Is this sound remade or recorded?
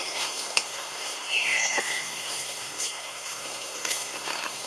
remade